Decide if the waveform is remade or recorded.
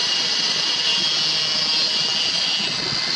recorded